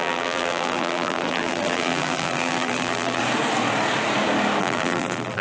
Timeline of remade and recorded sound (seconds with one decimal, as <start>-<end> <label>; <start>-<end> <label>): 0.0-3.2 remade; 3.2-4.6 recorded; 4.6-5.4 remade